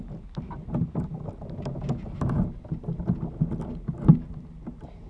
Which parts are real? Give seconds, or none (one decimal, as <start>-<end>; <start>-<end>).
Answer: 0.0-5.1